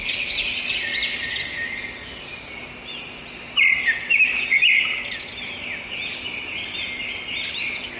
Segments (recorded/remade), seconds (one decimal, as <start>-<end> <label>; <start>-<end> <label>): 0.0-8.0 recorded